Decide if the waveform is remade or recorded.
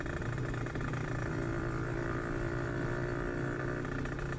recorded